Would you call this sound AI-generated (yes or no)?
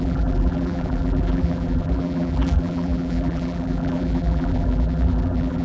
yes